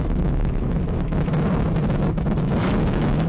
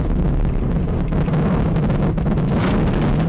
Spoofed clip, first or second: first